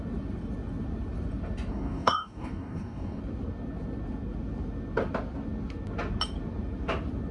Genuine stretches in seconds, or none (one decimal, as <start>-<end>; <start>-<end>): 0.0-1.7; 3.2-7.3